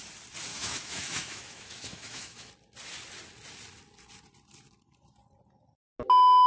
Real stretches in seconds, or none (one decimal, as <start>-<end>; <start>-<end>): 0.0-0.5; 2.5-6.5